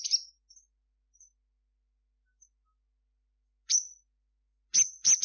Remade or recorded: recorded